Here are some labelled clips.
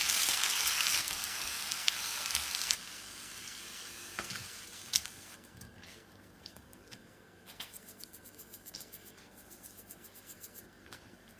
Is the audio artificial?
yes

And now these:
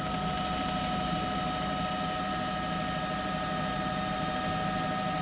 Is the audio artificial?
no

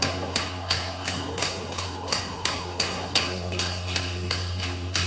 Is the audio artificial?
yes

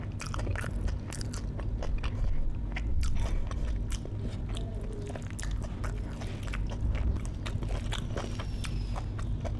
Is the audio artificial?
no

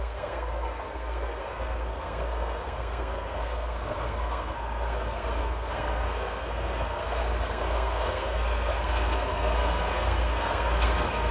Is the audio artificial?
yes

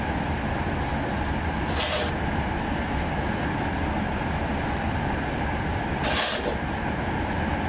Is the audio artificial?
no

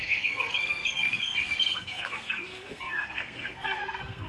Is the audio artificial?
yes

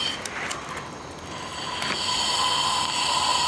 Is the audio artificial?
no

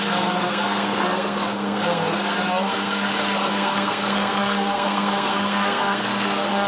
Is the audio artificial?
yes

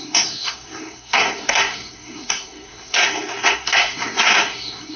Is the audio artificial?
yes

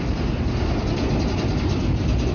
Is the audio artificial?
no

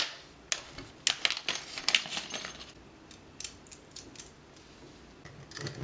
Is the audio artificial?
no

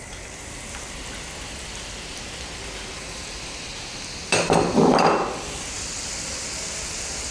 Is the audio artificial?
no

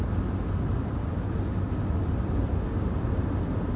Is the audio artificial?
no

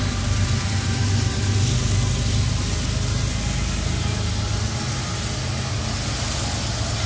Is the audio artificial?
no